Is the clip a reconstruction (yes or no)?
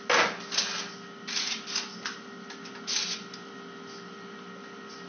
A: no